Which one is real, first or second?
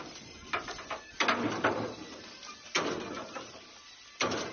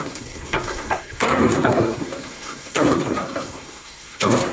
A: first